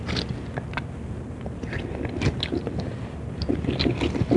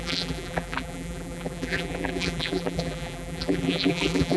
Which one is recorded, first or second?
first